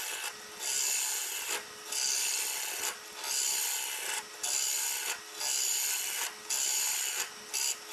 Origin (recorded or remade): recorded